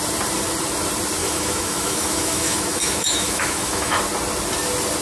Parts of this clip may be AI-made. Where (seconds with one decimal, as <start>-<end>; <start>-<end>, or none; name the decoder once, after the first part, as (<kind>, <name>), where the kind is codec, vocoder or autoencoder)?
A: 1.2-4.0 (autoencoder, DAC-VAE)